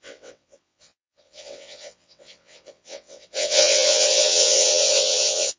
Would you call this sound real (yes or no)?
no